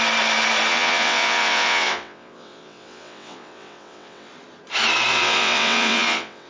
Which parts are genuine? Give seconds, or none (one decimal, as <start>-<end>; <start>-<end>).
0.0-0.7; 4.3-5.1